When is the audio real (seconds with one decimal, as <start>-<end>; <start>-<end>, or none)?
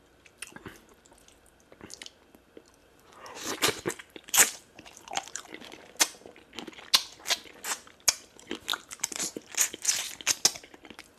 0.0-2.8; 3.5-4.0; 6.0-8.7; 9.5-11.2